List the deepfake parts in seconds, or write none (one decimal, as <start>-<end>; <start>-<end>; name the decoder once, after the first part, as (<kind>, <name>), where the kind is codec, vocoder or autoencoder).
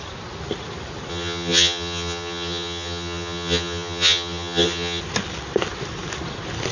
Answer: 1.1-5.0 (vocoder, HiFi-GAN)